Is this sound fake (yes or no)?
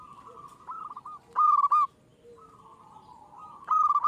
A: no